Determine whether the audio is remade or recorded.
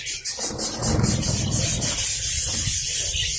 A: recorded